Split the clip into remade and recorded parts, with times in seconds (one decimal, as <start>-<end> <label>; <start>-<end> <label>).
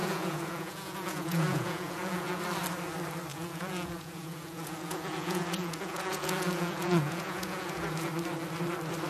0.0-2.4 remade; 2.4-3.3 recorded; 3.3-8.1 remade; 8.1-9.1 recorded